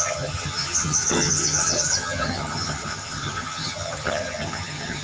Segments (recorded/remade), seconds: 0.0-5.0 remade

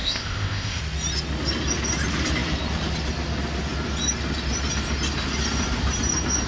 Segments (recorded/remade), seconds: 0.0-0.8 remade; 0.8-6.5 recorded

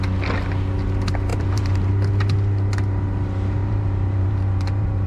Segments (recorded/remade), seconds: 0.0-1.3 recorded; 1.3-1.9 remade; 1.9-3.6 recorded; 3.6-5.1 remade

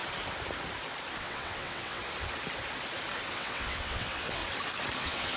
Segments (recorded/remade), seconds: 0.0-1.2 recorded; 1.2-2.0 remade; 2.0-3.3 recorded; 3.3-4.4 remade; 4.4-5.0 recorded; 5.0-5.4 remade

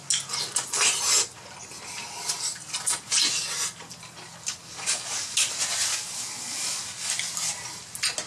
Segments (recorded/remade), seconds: 0.0-4.6 recorded; 4.6-5.5 remade; 5.5-5.9 recorded; 5.9-7.1 remade; 7.1-8.3 recorded

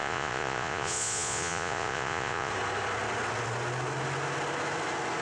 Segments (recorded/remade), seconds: 0.0-2.5 remade; 2.5-5.2 recorded